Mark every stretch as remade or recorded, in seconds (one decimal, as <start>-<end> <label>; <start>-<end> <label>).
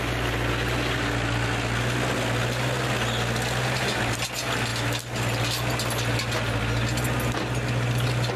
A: 0.0-8.4 recorded